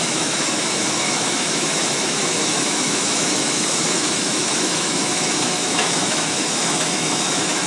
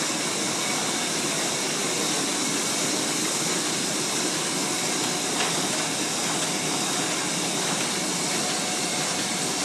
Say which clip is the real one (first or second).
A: second